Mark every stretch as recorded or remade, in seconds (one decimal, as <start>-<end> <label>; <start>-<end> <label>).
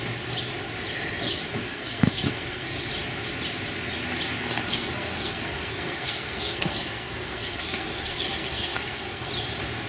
0.0-1.7 recorded; 1.7-2.9 remade; 2.9-4.7 recorded; 4.7-9.3 remade; 9.3-9.9 recorded